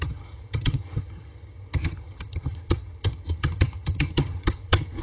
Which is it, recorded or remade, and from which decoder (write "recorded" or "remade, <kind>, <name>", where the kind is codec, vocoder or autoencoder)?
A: remade, vocoder, HiFi-GAN